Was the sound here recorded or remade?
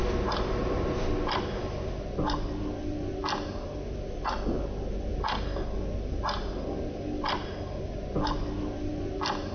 recorded